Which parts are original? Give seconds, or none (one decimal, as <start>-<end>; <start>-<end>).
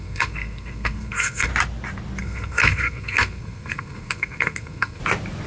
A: 1.5-2.2; 5.0-5.5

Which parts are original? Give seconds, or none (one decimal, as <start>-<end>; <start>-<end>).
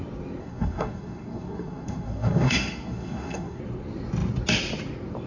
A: 0.0-0.4; 3.6-5.3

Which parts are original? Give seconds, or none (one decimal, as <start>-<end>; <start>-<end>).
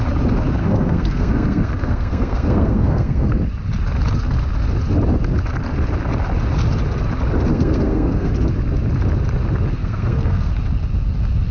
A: 0.0-0.6; 3.4-7.5; 8.3-9.8; 10.5-11.5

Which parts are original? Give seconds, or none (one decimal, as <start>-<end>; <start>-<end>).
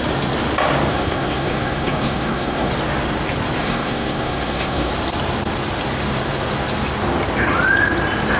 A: 0.0-0.9; 2.7-3.6; 4.9-8.4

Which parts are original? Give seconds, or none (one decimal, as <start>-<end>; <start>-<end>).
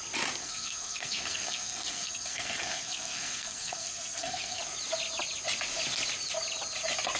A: 0.0-0.4; 4.6-7.2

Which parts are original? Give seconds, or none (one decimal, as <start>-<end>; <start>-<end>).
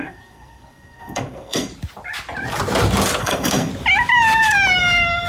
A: 1.7-3.2; 3.7-5.3